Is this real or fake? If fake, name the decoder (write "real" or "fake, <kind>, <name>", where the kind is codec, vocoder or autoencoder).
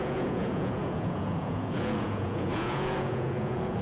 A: fake, vocoder, Vocos